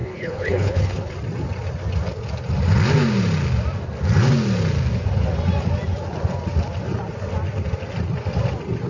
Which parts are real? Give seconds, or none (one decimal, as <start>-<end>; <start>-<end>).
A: 1.1-8.9